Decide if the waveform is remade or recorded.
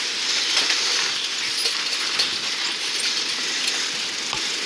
recorded